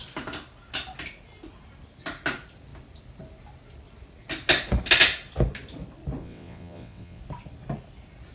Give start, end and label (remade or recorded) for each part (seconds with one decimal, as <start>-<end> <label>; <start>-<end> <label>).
0.0-6.2 recorded; 6.2-7.2 remade; 7.2-8.3 recorded